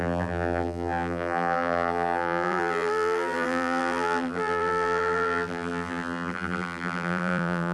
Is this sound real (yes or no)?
no